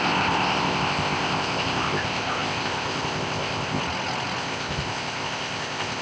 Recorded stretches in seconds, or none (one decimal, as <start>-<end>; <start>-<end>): 3.8-4.4